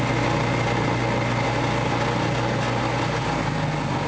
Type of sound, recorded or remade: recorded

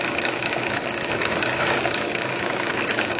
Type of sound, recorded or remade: remade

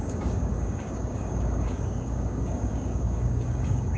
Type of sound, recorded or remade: remade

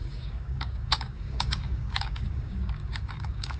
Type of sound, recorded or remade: remade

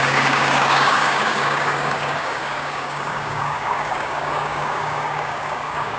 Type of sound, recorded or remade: remade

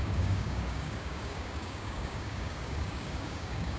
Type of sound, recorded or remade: remade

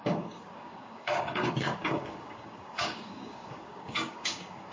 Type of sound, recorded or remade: remade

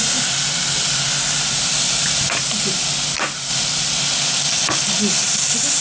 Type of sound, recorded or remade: recorded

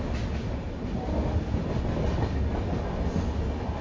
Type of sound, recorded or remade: recorded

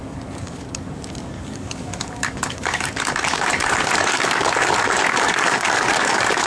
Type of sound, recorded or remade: remade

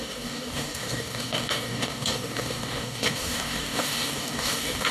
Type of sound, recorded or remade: remade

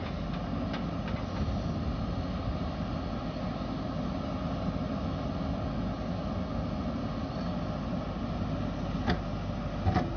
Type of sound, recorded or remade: recorded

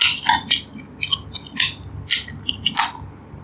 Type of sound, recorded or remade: recorded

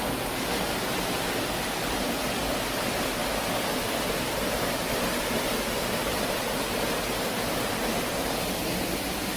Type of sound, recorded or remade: recorded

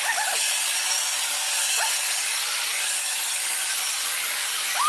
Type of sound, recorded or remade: remade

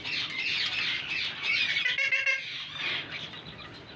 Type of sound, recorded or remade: recorded